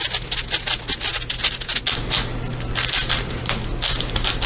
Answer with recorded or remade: recorded